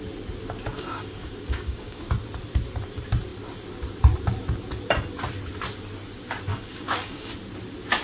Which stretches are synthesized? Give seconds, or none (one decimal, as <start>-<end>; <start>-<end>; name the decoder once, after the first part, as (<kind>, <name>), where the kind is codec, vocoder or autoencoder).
0.7-2.0 (codec, DAC); 6.5-7.3